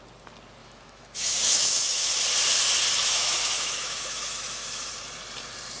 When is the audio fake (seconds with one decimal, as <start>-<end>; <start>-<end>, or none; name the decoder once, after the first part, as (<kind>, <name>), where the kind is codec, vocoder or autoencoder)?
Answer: 0.6-2.1 (autoencoder, DAC-VAE); 3.0-4.9